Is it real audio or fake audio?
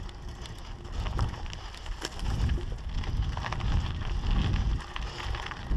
real